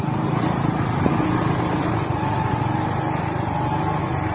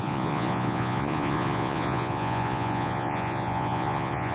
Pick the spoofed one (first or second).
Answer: second